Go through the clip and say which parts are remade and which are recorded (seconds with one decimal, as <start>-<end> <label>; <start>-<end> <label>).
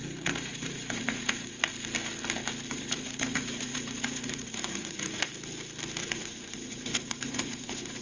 0.0-1.7 remade; 1.7-2.7 recorded; 2.7-5.3 remade; 5.3-6.0 recorded; 6.0-8.0 remade